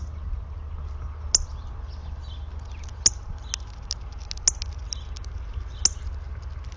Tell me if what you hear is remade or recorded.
recorded